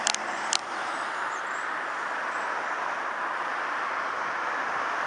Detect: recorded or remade remade